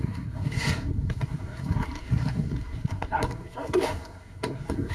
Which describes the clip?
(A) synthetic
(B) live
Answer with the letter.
A